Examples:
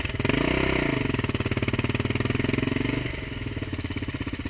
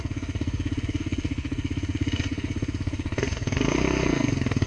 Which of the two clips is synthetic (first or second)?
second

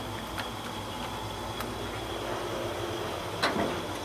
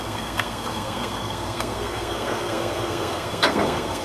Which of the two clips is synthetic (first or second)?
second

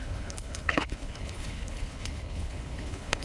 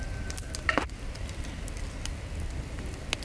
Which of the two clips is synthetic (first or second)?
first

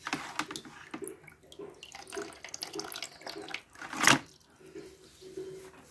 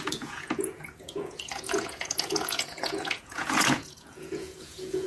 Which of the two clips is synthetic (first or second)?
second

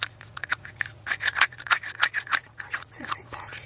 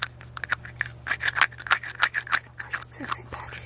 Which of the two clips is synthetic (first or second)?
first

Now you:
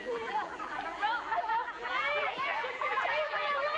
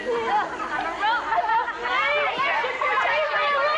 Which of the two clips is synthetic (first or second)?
first